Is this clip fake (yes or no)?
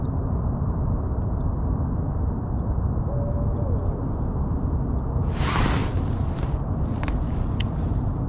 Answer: no